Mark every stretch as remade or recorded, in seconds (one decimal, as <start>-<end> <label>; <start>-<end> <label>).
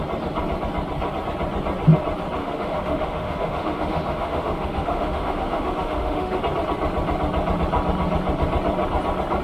0.0-2.4 recorded; 2.4-6.4 remade; 6.4-9.4 recorded